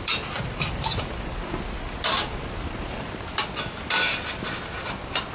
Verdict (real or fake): real